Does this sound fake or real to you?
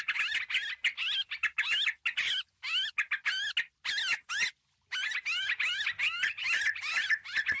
real